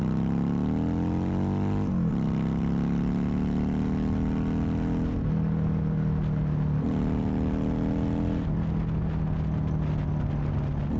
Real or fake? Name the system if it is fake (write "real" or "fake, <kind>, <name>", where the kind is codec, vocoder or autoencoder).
real